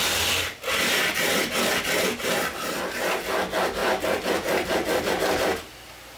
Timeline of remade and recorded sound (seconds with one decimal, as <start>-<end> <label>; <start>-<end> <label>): 0.0-3.8 recorded; 3.8-5.1 remade; 5.1-6.2 recorded